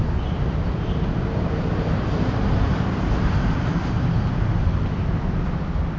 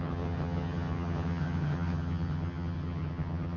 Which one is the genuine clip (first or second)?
first